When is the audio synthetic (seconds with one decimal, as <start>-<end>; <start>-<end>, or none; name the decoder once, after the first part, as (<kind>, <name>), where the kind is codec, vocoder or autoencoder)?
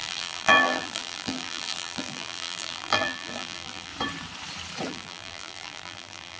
0.0-3.9 (vocoder, BigVGAN v2); 4.9-6.4